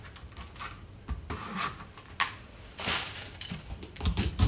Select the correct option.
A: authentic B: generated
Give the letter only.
A